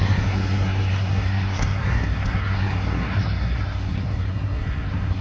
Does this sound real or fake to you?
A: fake